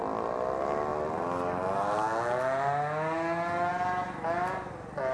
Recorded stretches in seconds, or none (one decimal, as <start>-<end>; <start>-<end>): 0.0-5.1